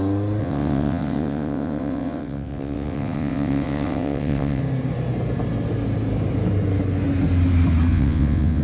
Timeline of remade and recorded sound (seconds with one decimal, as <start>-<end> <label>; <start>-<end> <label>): 0.0-0.4 recorded; 0.4-4.6 remade; 4.6-7.9 recorded; 7.9-8.6 remade